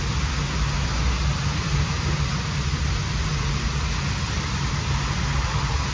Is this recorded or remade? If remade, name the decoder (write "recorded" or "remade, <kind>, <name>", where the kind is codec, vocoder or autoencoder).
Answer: recorded